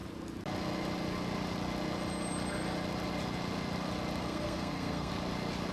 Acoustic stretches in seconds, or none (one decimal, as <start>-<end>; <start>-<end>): 0.0-4.2; 5.1-5.7